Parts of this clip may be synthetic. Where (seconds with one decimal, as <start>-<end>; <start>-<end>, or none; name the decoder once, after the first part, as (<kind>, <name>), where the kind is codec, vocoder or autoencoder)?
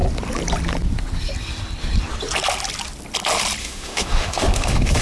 3.6-5.0 (autoencoder, DAC-VAE)